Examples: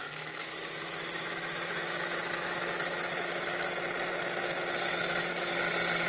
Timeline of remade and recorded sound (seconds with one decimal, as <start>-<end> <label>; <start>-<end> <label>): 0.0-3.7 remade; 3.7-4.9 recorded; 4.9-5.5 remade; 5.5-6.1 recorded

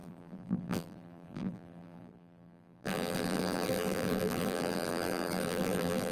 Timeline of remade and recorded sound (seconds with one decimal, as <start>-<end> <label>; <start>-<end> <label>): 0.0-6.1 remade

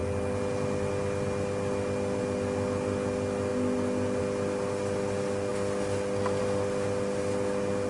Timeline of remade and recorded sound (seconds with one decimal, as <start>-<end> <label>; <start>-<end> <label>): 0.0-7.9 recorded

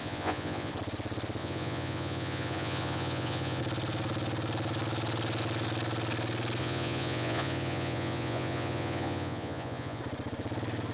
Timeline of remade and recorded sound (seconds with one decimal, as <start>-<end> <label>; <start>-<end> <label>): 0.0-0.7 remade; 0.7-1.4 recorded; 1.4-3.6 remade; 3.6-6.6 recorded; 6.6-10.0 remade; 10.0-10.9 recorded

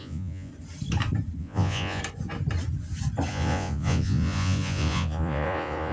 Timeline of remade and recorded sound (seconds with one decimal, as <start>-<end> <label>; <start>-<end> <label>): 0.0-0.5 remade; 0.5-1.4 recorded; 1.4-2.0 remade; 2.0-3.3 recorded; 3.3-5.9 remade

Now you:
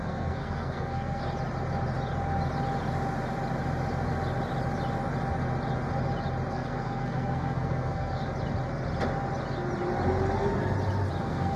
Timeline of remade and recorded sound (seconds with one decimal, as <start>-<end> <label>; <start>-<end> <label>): 0.0-1.2 remade; 1.2-6.5 recorded; 6.5-8.2 remade; 8.2-11.2 recorded; 11.2-11.6 remade

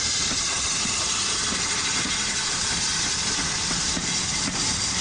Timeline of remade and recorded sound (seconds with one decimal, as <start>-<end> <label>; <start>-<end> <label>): 0.0-2.9 remade; 2.9-3.6 recorded; 3.6-5.0 remade